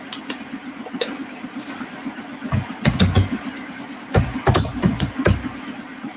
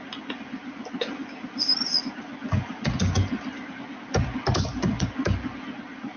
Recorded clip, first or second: second